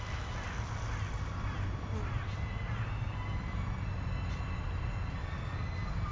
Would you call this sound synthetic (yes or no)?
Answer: no